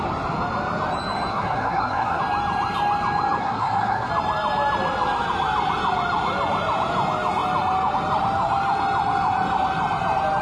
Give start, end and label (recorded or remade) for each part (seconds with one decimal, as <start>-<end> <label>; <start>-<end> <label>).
0.0-1.3 recorded; 1.3-2.2 remade; 2.2-3.4 recorded; 3.4-4.1 remade; 4.1-10.4 recorded